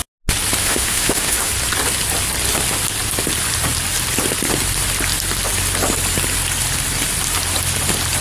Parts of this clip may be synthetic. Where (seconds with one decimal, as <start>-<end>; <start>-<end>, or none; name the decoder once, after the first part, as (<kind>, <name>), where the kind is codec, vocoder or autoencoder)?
0.6-1.5 (autoencoder, DAC-VAE)